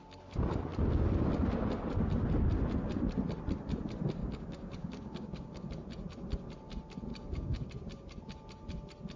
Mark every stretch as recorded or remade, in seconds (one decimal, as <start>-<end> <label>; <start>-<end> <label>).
0.0-4.2 recorded; 4.2-5.7 remade; 5.7-7.1 recorded; 7.1-7.7 remade; 7.7-9.2 recorded